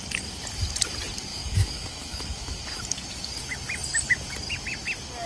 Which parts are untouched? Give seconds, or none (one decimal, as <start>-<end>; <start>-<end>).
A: 0.0-1.3; 2.8-5.3